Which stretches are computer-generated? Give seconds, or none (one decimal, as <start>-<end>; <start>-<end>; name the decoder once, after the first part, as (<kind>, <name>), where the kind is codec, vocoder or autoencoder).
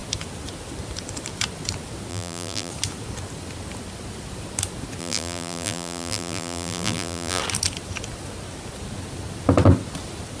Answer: 2.1-2.7 (vocoder, BigVGAN v2); 5.0-7.4